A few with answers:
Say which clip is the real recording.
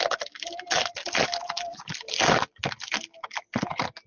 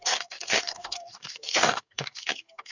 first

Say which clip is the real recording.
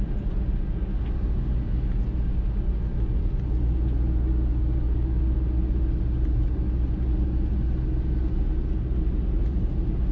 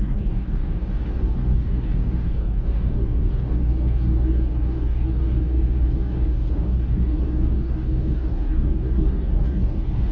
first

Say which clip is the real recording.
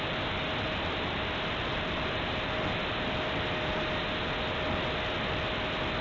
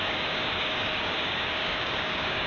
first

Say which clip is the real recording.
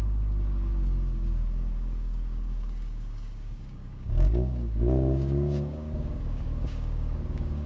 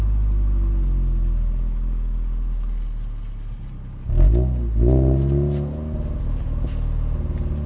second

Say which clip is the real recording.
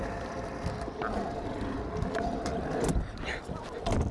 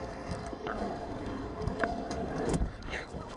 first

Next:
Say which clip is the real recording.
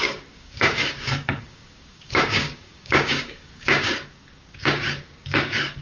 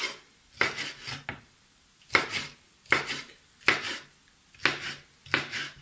second